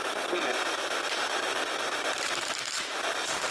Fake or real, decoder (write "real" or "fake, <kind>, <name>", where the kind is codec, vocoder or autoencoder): fake, vocoder, BigVGAN v2